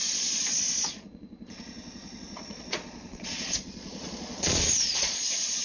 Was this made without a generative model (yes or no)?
no